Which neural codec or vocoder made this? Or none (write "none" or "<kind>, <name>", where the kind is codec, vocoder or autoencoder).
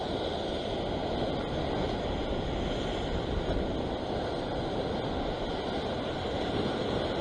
none